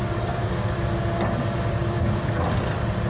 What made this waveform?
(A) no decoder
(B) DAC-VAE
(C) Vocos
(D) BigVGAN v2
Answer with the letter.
D